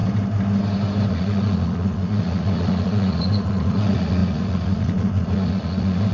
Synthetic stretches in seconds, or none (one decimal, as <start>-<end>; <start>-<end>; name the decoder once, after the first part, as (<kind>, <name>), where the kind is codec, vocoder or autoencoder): 1.1-6.1 (vocoder, Vocos)